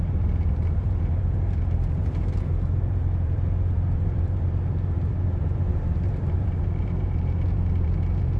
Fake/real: fake